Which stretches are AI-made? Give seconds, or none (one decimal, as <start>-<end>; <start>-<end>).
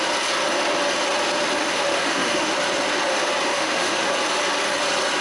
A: 1.6-2.5; 3.5-4.1